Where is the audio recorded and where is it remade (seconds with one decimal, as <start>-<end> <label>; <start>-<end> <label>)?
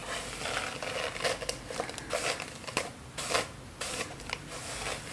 0.0-5.1 recorded